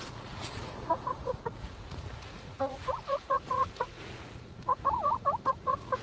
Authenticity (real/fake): fake